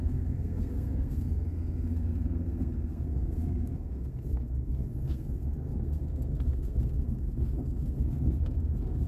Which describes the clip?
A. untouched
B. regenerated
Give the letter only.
B